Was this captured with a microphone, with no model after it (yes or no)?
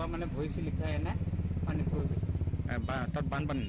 yes